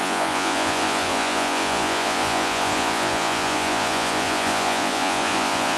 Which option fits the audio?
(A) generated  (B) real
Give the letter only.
A